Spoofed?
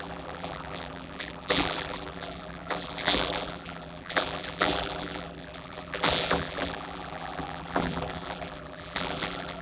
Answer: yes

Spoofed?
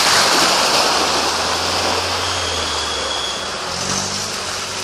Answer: no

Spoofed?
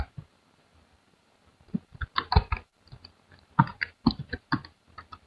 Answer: yes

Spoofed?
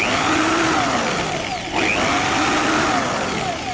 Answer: no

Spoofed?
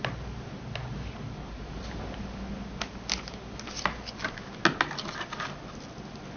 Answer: no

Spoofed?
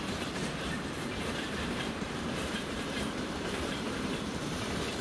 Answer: yes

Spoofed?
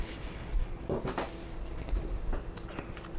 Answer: yes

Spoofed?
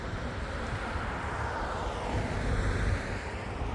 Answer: yes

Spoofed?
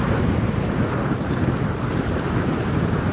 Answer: yes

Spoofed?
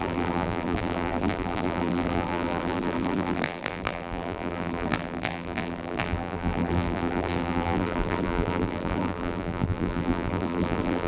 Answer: yes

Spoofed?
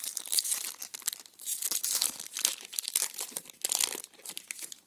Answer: yes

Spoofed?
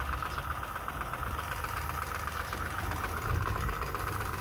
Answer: no